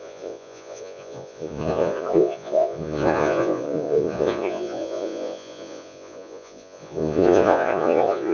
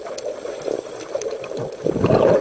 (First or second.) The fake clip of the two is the first